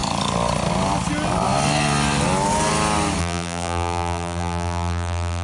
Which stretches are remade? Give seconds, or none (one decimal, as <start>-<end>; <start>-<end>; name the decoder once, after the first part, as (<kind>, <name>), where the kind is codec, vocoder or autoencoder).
3.2-5.4 (vocoder, BigVGAN v2)